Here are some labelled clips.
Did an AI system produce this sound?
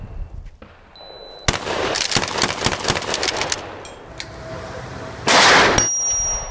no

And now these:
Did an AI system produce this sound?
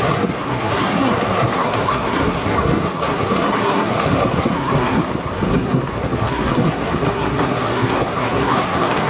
yes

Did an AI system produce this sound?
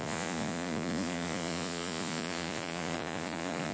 yes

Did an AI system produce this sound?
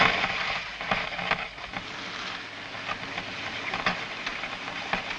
no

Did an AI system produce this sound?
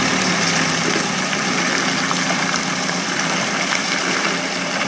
yes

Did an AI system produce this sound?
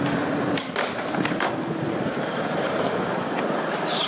yes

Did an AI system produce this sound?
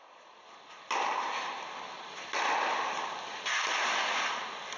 no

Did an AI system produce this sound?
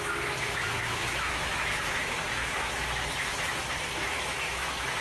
yes